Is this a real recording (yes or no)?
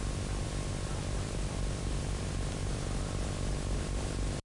no